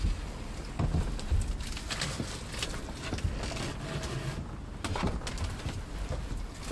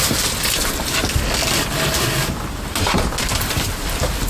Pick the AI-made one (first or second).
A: second